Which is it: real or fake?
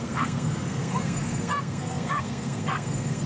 fake